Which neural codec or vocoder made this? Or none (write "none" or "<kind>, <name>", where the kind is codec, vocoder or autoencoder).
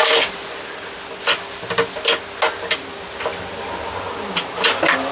none